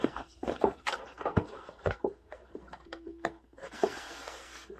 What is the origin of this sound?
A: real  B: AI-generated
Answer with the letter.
B